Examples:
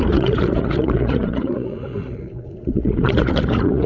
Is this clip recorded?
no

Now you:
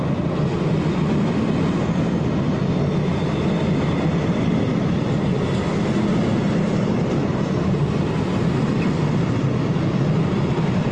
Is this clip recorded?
yes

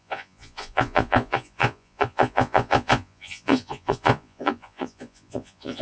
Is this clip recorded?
no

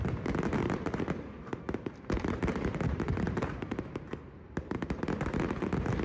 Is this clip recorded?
no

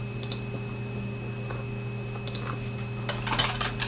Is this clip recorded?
yes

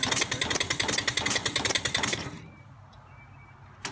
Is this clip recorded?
yes